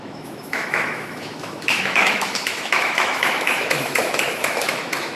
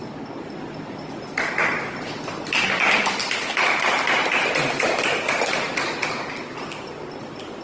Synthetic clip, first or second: first